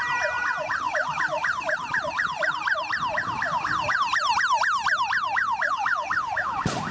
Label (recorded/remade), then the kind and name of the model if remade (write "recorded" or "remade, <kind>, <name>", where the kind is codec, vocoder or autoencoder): remade, vocoder, BigVGAN v2